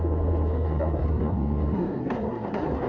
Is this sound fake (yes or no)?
yes